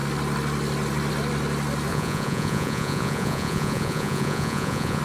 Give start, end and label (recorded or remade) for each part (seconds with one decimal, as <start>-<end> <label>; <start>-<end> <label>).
0.0-1.9 recorded; 1.9-5.0 remade